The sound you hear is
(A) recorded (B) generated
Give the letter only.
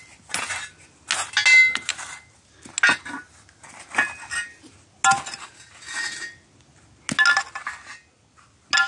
A